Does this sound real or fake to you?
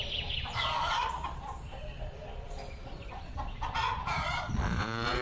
fake